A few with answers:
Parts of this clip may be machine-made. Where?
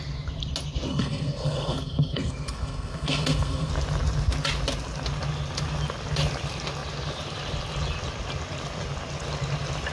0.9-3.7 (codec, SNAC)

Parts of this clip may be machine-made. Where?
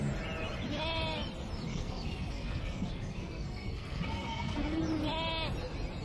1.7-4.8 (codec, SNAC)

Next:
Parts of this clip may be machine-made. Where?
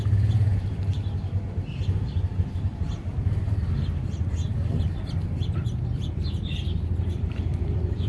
none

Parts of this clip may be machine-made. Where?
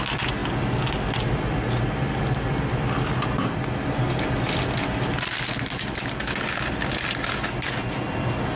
none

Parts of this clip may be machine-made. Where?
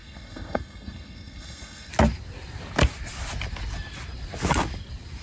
0.0-1.9 (codec, SNAC)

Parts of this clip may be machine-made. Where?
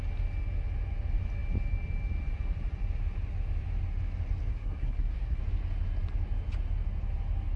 4.5-5.4 (codec, SNAC)